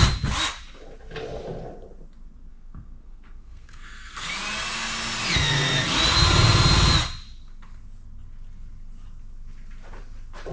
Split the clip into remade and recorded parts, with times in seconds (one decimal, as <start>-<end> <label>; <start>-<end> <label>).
0.0-2.5 recorded; 2.5-4.3 remade; 4.3-10.5 recorded